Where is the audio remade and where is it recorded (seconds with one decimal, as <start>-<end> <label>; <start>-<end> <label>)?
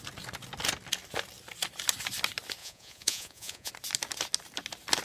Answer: 0.0-2.6 recorded; 2.6-3.7 remade; 3.7-5.0 recorded